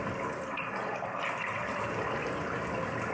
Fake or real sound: real